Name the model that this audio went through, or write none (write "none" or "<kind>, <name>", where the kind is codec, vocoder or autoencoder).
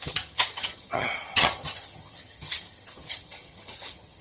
vocoder, HiFi-GAN